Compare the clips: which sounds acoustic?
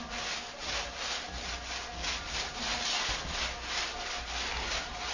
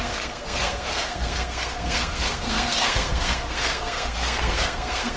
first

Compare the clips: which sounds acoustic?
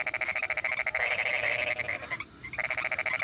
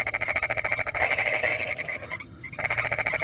first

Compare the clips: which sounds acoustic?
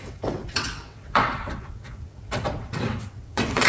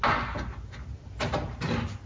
second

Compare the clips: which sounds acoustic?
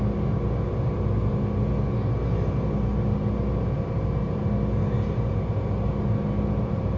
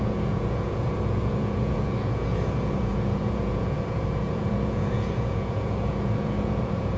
first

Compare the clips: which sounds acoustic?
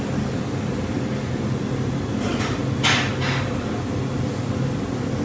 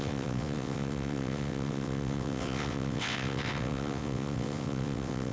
first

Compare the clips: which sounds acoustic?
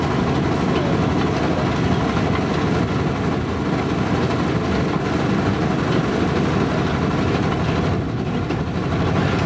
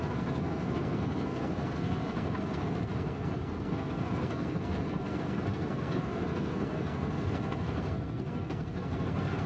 first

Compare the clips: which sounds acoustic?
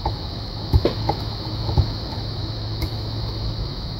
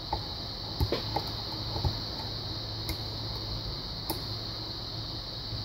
second